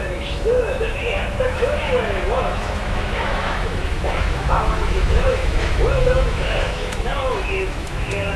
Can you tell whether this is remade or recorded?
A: remade